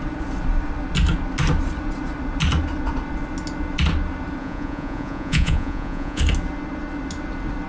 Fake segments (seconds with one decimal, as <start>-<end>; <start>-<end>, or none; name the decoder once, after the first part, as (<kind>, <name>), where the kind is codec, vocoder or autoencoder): 4.4-6.2 (vocoder, Vocos)